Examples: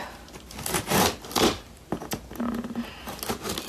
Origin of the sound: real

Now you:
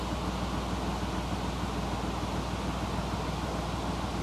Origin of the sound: real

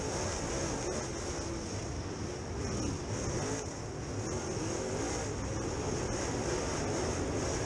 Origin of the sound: real